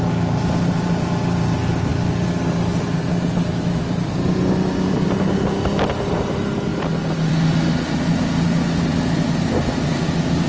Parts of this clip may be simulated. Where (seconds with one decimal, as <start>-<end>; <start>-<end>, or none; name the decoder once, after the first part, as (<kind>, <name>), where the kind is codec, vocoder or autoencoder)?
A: none